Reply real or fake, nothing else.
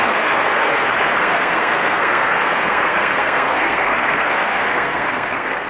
fake